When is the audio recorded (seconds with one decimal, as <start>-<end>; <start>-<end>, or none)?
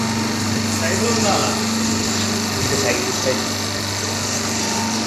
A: 0.0-5.1